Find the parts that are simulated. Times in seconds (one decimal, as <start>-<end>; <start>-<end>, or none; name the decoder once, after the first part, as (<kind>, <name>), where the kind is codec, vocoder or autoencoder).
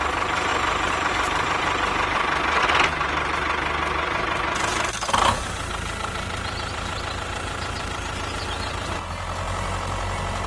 0.5-1.1 (vocoder, BigVGAN v2)